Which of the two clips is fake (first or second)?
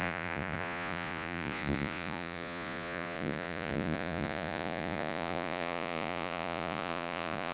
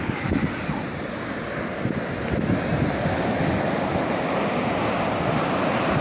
first